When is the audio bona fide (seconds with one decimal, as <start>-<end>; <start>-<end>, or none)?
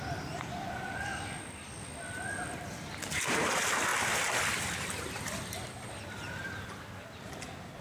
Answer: 1.1-3.1